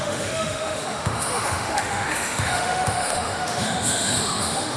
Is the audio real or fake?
fake